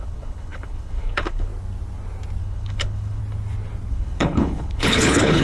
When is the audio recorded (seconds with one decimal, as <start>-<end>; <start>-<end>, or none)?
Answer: 1.5-2.4; 3.2-3.9